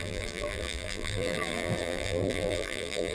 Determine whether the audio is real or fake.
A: fake